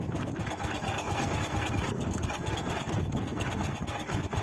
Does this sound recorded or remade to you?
remade